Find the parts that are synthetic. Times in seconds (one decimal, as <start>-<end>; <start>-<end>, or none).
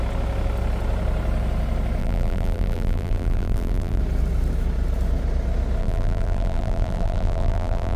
2.0-4.0; 5.8-8.0